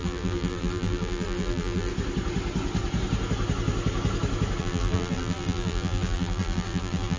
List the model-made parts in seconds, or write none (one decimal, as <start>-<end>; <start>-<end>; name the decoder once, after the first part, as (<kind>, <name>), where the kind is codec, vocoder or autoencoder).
0.0-1.9 (vocoder, BigVGAN v2); 4.6-7.2